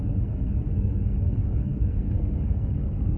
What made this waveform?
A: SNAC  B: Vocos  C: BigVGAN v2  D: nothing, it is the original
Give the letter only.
A